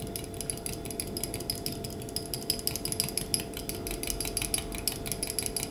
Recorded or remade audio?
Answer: recorded